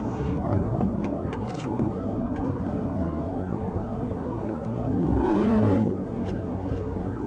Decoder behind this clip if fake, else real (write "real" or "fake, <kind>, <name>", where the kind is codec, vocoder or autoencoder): fake, codec, SNAC